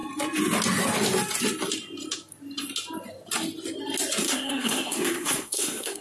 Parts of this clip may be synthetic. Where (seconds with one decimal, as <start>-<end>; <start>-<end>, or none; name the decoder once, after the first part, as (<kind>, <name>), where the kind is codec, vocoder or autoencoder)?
4.2-6.0 (codec, SNAC)